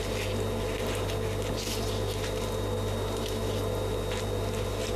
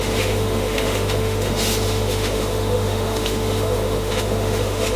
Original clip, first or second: first